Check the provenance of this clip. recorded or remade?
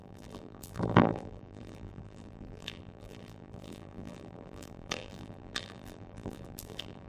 remade